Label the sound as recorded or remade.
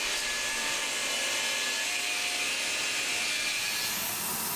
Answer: recorded